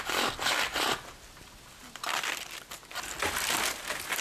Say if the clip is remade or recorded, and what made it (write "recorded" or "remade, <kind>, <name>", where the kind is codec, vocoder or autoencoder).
recorded